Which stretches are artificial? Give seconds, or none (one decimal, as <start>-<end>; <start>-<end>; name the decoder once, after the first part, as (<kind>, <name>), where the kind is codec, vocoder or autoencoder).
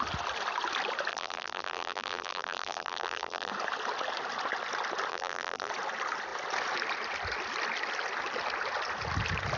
1.1-3.5 (vocoder, BigVGAN v2); 5.1-5.7